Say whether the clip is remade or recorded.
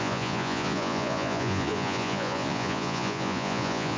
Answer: remade